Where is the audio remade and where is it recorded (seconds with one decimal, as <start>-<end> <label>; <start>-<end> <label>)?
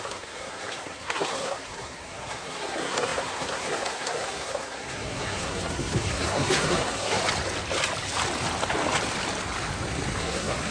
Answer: 0.0-7.2 remade; 7.2-10.2 recorded; 10.2-10.7 remade